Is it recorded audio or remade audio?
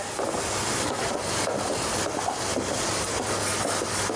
recorded